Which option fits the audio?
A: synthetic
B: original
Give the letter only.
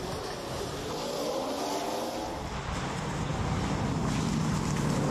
B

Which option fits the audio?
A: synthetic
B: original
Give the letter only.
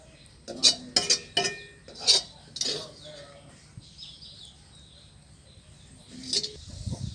B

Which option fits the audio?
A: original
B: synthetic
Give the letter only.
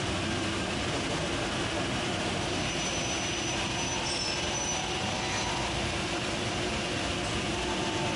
A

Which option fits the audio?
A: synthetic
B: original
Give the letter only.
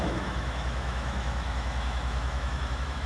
A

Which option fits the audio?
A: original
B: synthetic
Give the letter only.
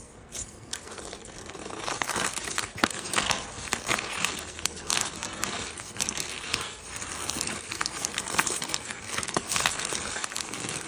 B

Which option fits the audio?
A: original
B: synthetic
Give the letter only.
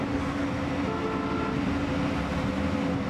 A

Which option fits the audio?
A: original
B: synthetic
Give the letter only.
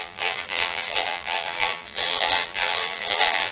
B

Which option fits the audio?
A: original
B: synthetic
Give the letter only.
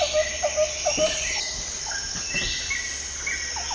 A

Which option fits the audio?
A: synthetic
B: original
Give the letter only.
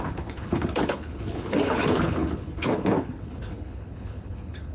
A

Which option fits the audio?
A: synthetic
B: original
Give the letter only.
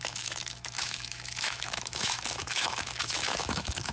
A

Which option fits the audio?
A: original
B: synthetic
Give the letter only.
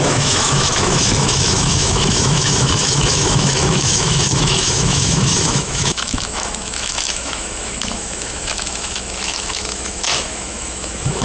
B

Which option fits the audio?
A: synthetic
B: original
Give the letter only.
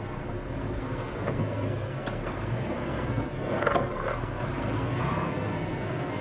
A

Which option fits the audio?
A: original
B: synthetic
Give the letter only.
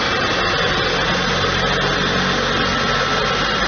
A